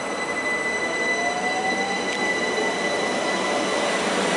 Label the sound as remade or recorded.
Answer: recorded